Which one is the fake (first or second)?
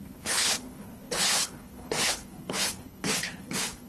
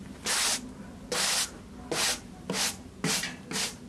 first